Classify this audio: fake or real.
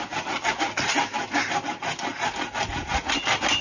real